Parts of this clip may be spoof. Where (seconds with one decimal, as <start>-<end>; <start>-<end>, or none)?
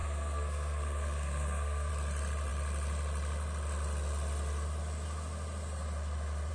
0.0-1.9